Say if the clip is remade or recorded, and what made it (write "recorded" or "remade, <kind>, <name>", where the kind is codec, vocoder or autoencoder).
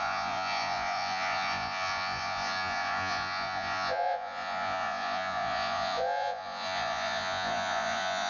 remade, vocoder, Vocos